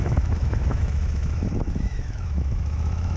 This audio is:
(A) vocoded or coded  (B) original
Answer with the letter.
A